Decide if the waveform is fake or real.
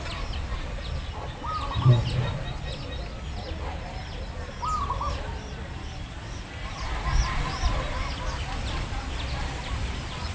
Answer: real